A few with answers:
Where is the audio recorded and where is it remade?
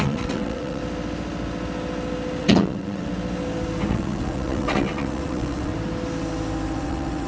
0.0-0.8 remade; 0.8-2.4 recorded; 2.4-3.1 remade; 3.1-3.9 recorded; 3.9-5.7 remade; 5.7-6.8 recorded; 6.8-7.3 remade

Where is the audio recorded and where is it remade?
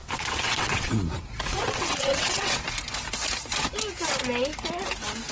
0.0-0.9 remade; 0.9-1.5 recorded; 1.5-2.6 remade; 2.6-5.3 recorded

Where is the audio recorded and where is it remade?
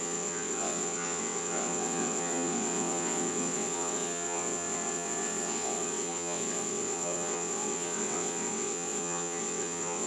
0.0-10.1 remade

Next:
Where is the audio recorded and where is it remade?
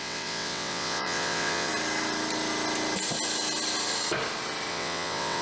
0.0-1.7 remade; 1.7-4.7 recorded; 4.7-5.4 remade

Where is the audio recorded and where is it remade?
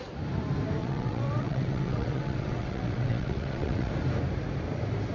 0.0-0.8 recorded; 0.8-3.9 remade; 3.9-5.1 recorded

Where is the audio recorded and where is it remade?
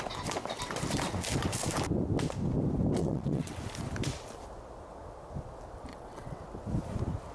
0.0-3.0 recorded; 3.0-3.6 remade; 3.6-5.9 recorded; 5.9-6.4 remade; 6.4-7.3 recorded